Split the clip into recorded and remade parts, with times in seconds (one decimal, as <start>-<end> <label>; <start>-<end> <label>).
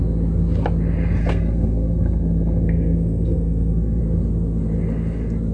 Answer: 0.0-1.2 recorded; 1.2-4.0 remade; 4.0-5.5 recorded